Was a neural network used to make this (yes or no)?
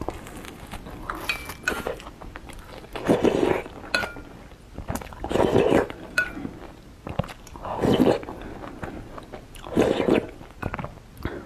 no